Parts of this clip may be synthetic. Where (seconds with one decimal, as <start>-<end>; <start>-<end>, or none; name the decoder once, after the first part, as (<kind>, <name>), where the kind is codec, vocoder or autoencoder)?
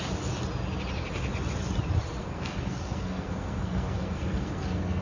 2.2-5.0 (codec, SNAC)